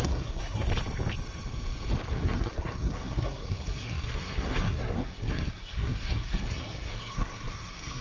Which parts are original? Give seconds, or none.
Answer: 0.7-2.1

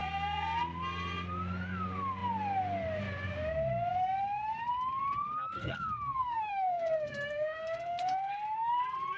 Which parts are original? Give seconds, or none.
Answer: 0.6-5.6; 8.3-9.2

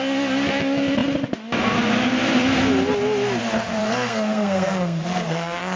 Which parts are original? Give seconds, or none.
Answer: 0.0-3.8

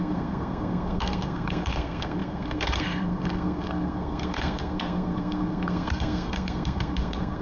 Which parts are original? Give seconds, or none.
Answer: none

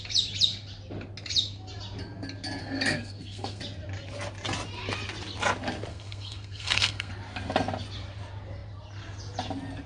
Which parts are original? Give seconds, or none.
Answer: 0.0-2.6; 3.6-5.9; 7.1-9.9